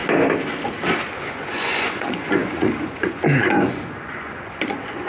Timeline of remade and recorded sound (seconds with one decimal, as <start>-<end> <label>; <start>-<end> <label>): 0.0-1.2 recorded; 1.2-5.1 remade

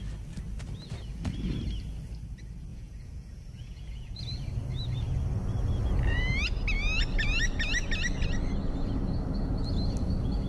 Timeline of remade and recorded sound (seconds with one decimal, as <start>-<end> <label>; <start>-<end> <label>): 0.0-2.7 recorded; 2.7-4.2 remade; 4.2-10.5 recorded

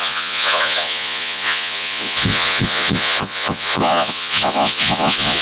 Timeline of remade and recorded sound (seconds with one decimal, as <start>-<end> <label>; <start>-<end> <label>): 0.0-5.4 remade

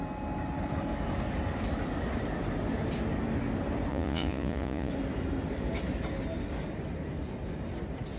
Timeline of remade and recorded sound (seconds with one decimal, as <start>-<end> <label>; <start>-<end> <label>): 0.0-3.9 recorded; 3.9-4.9 remade; 4.9-8.2 recorded

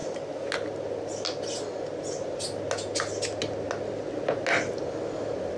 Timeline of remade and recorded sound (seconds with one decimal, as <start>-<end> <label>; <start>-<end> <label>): 0.0-5.6 recorded